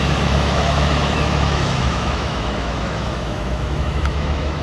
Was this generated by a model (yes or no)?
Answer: yes